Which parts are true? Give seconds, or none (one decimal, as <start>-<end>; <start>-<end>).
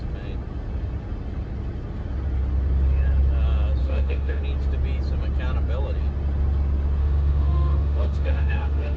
0.0-3.8; 4.4-7.0